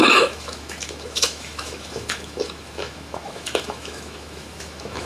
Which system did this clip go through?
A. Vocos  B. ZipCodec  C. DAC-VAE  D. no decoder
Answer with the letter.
C